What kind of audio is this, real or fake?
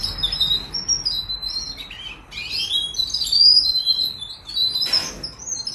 real